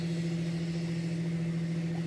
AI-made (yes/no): no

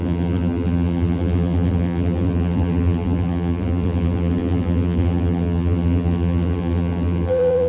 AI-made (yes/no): yes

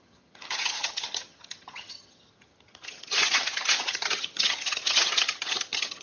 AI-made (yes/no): yes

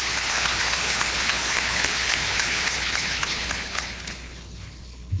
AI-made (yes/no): yes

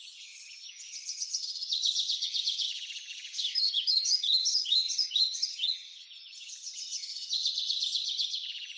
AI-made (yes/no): yes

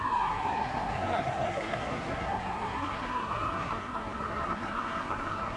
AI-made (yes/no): yes